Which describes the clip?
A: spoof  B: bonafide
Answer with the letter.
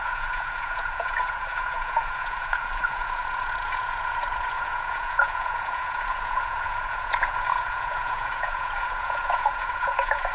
A